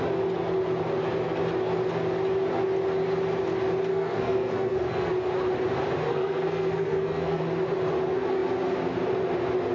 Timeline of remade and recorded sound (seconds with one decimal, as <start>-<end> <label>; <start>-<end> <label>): 0.0-3.9 recorded; 3.9-5.1 remade; 5.1-6.1 recorded; 6.1-7.4 remade; 7.4-9.7 recorded